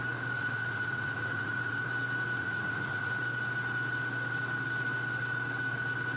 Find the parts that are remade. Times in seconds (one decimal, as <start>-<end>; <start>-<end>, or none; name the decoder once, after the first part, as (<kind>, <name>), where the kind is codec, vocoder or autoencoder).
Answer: 0.4-1.8 (vocoder, Vocos); 2.4-3.2